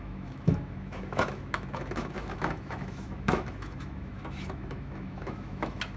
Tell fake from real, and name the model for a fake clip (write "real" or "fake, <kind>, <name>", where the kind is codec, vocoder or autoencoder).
fake, autoencoder, DAC-VAE